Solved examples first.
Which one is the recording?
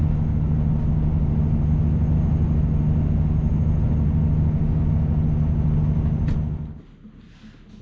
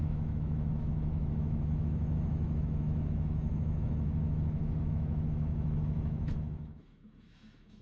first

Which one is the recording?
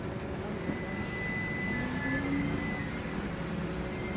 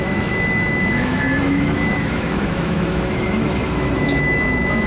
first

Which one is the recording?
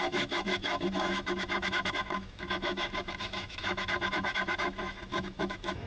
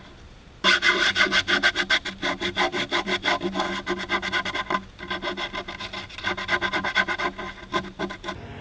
second